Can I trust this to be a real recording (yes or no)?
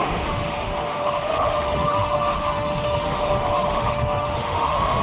no